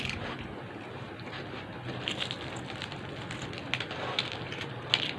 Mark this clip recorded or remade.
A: recorded